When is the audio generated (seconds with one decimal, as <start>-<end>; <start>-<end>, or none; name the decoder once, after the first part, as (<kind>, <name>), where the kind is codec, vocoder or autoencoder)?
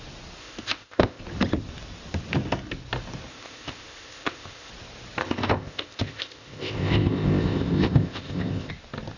0.4-1.2 (codec, ZipCodec); 3.3-4.7; 5.2-8.7